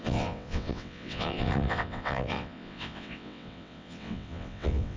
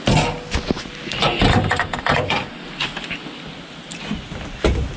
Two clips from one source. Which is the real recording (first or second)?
second